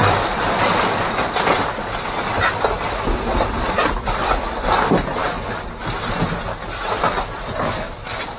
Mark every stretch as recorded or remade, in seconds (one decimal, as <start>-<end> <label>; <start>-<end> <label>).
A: 0.0-5.2 remade; 5.2-7.0 recorded; 7.0-8.4 remade